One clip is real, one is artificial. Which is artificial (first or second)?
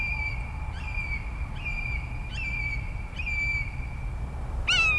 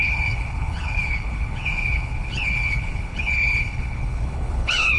second